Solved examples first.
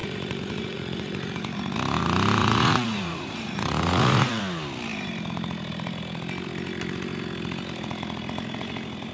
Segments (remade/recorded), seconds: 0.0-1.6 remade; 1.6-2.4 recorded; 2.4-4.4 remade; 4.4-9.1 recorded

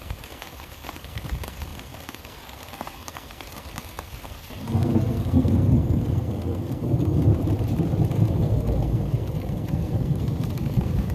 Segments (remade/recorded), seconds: 0.0-7.3 remade; 7.3-8.1 recorded; 8.1-11.1 remade

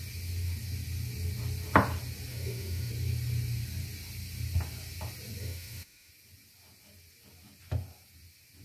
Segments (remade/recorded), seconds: 0.0-2.3 recorded; 2.3-2.9 remade; 2.9-5.4 recorded; 5.4-6.1 remade; 6.1-8.6 recorded

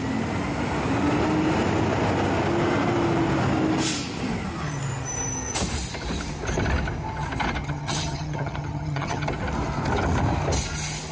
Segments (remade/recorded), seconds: 0.0-7.6 recorded; 7.6-9.3 remade; 9.3-11.1 recorded